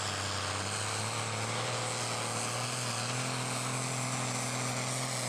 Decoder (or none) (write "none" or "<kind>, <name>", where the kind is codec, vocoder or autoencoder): none